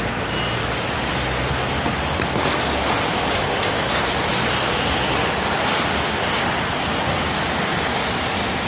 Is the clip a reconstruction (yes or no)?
no